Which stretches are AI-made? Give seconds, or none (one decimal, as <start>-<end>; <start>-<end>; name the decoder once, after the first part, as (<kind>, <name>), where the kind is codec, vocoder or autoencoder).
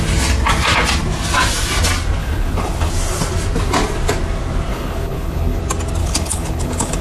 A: 2.2-2.9 (codec, HILCodec); 4.7-5.6; 6.0-7.0